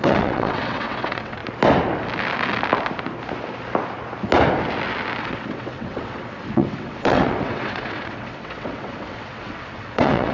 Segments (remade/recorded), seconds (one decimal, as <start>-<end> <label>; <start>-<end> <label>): 0.0-1.4 remade; 1.4-5.2 recorded; 5.2-10.3 remade